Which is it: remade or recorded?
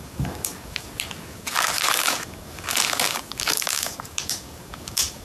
remade